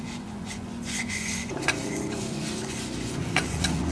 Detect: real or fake fake